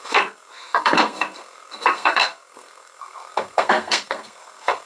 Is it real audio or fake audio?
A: fake